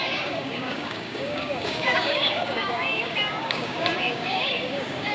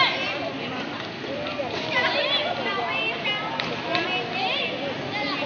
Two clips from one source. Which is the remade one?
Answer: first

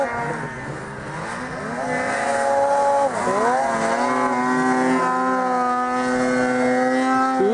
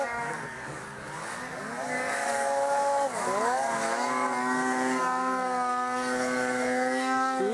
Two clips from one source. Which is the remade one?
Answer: second